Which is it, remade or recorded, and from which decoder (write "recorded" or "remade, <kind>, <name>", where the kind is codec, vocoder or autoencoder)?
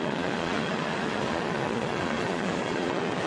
remade, vocoder, Vocos